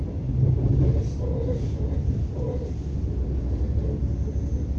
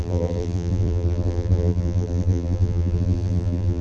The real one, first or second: first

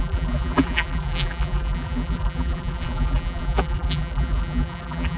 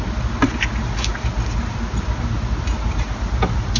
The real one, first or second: second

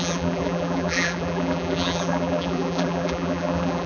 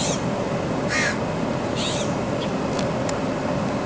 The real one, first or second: second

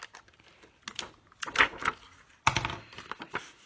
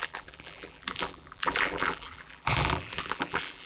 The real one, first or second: first